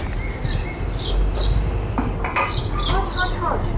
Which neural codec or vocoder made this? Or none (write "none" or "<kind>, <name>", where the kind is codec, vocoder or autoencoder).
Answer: none